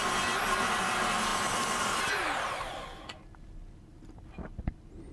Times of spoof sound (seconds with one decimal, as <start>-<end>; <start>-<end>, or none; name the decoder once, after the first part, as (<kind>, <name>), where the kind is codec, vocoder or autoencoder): 1.3-4.4 (vocoder, BigVGAN v2)